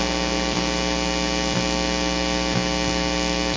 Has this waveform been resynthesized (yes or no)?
no